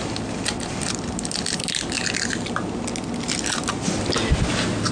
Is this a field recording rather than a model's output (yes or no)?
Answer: yes